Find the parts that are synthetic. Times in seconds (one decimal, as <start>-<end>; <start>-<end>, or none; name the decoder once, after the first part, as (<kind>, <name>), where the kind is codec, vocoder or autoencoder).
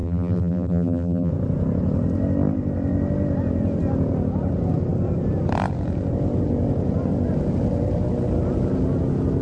0.0-1.3 (vocoder, BigVGAN v2)